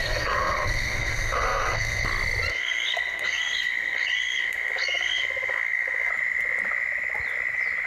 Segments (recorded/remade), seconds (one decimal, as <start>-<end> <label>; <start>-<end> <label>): 0.0-2.0 remade; 2.0-2.5 recorded; 2.5-6.1 remade; 6.1-7.9 recorded